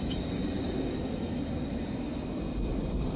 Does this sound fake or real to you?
real